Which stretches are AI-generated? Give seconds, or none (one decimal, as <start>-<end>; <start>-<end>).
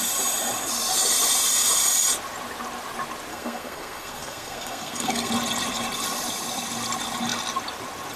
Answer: 3.3-5.3